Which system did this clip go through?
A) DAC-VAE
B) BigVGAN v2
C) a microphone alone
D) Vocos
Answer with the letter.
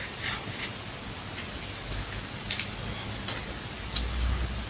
C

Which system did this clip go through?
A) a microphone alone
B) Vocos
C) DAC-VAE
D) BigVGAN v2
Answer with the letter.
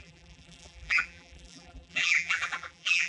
D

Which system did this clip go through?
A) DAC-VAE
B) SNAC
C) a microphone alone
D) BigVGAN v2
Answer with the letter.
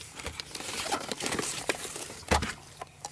D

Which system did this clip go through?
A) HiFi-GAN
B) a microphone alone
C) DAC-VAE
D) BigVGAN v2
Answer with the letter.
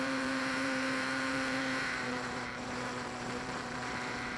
D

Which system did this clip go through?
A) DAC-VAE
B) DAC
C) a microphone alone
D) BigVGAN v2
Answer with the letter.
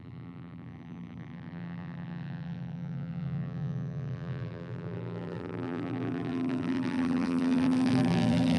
D